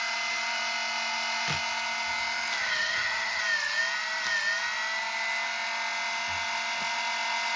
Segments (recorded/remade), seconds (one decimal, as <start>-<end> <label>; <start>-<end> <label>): 0.0-2.6 recorded; 2.6-3.4 remade; 3.4-7.6 recorded